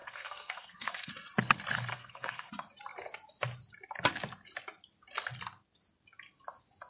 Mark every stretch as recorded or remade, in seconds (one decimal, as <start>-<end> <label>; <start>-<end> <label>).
0.0-1.1 remade; 1.1-1.9 recorded; 1.9-2.5 remade; 2.5-6.9 recorded

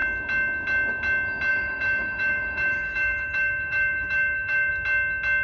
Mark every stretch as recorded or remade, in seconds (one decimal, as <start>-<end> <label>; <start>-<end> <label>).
0.0-1.5 recorded; 1.5-4.7 remade; 4.7-5.4 recorded